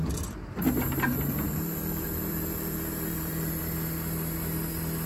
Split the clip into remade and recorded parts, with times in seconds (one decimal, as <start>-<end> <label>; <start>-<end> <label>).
0.0-1.1 recorded; 1.1-3.6 remade; 3.6-5.1 recorded